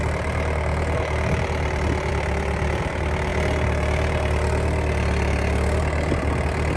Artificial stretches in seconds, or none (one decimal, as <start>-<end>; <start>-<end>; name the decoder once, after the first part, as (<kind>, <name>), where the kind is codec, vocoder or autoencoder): none

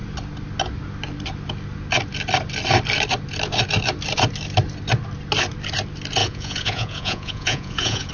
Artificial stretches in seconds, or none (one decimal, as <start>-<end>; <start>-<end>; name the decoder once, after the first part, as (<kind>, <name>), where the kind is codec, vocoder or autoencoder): 6.2-8.1 (vocoder, Vocos)

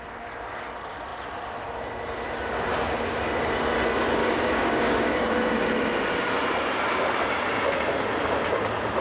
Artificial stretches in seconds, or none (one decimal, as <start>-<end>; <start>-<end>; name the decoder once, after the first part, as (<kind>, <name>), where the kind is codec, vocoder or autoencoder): 4.2-5.3 (codec, DAC)

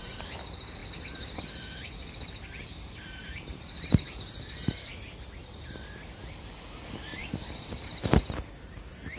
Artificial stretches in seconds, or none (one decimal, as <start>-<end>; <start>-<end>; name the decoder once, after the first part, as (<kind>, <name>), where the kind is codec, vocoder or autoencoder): 3.2-4.1 (vocoder, BigVGAN v2); 7.2-8.4

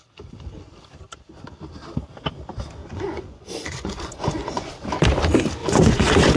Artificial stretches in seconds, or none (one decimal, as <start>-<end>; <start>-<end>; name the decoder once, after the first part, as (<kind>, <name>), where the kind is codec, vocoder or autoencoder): 2.8-4.7 (vocoder, Vocos); 5.6-6.4

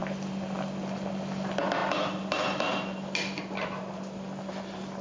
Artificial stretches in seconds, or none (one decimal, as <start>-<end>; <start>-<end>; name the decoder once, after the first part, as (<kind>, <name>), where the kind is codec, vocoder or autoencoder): none

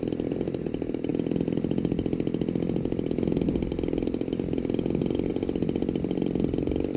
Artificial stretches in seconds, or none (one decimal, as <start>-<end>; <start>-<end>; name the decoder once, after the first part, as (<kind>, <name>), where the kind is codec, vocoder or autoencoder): none